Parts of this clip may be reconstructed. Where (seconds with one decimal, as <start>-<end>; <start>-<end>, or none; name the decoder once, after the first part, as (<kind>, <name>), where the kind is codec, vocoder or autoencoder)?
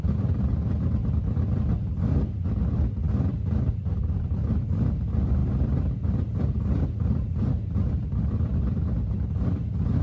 0.0-1.0 (vocoder, BigVGAN v2); 3.7-10.0